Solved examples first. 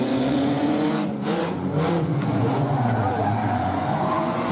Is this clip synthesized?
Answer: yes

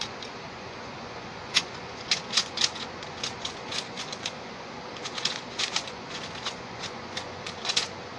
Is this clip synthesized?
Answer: yes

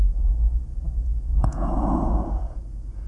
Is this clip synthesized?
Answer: yes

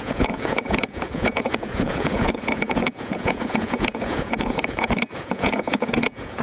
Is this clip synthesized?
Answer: yes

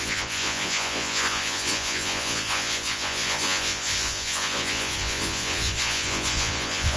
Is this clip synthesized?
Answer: yes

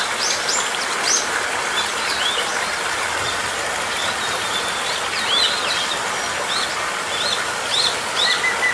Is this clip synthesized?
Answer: no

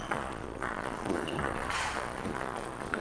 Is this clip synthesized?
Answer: yes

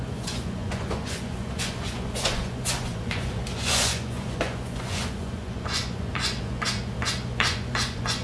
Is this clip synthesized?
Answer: yes